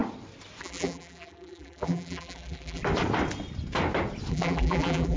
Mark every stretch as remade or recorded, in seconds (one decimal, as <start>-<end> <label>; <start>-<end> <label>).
0.0-0.6 recorded; 0.6-2.8 remade; 2.8-4.3 recorded; 4.3-5.2 remade